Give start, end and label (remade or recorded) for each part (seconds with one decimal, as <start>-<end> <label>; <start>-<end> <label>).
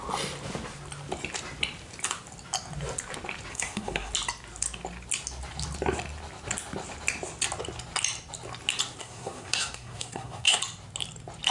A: 0.0-3.5 recorded; 3.5-4.1 remade; 4.1-9.0 recorded; 9.0-10.6 remade; 10.6-11.5 recorded